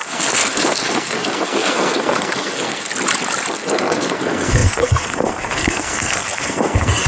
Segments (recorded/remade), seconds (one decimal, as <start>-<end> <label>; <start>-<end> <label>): 0.0-2.9 remade; 2.9-3.5 recorded; 3.5-7.1 remade